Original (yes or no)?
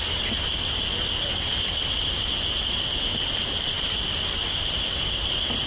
yes